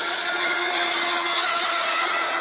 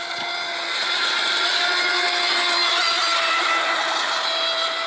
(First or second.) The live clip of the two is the second